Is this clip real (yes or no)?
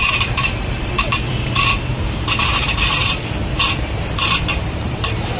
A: no